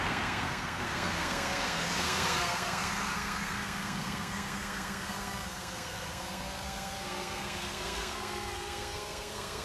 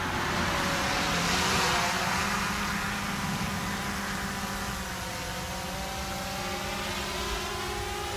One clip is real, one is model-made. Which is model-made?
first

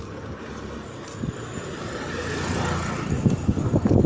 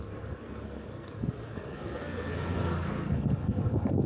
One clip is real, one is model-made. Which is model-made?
second